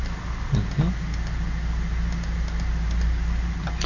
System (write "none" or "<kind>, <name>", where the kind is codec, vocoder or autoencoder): none